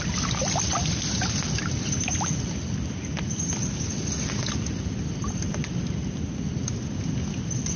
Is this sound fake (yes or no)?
no